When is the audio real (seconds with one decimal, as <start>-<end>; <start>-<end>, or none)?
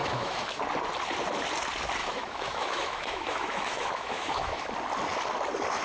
0.6-2.0; 4.7-5.8